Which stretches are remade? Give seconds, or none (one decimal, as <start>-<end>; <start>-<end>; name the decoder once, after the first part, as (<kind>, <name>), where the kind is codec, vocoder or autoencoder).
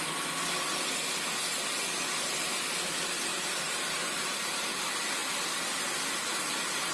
3.3-3.9 (vocoder, BigVGAN v2)